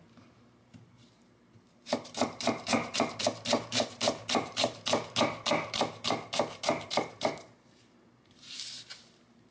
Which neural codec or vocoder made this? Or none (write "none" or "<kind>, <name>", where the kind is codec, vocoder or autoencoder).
vocoder, BigVGAN v2